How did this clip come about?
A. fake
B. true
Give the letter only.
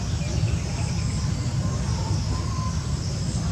B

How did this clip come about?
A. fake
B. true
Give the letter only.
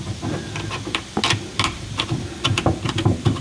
B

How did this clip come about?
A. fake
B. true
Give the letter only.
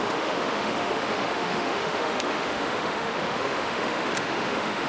A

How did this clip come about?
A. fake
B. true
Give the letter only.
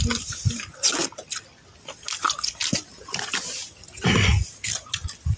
B